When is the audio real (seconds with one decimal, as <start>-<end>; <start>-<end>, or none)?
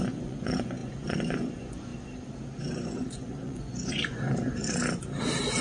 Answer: 1.9-2.6; 4.6-5.6